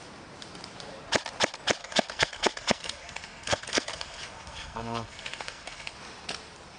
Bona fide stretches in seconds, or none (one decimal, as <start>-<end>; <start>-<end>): 0.0-1.8; 5.9-6.8